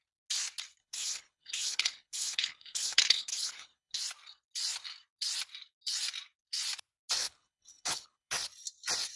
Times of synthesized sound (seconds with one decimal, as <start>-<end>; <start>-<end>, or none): 0.8-4.0; 7.2-8.3